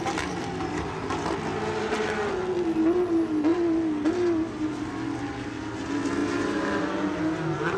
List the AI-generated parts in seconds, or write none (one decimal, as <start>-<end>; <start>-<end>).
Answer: 0.4-1.0

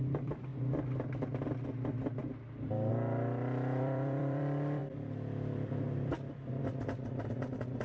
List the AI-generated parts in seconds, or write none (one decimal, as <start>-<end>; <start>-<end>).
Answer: 0.0-0.5; 2.9-7.8

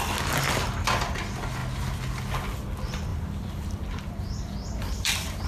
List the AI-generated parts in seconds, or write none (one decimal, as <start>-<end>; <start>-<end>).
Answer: 3.1-5.5

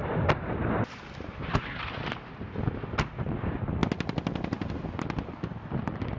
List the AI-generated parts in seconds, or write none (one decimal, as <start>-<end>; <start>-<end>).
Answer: none

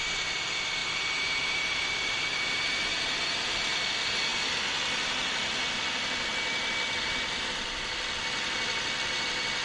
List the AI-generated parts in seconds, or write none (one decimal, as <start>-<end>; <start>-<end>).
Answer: 0.8-2.2; 2.9-3.5